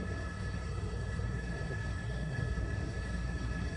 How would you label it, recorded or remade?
remade